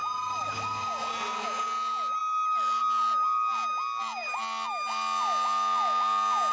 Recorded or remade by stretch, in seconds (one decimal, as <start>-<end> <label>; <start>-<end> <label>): 0.0-6.5 recorded